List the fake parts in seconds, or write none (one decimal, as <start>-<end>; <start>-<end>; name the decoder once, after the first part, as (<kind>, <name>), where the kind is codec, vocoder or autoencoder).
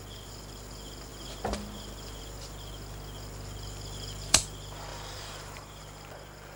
4.9-5.8 (vocoder, BigVGAN v2)